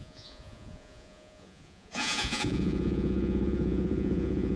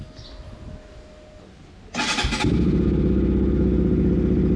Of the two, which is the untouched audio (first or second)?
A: second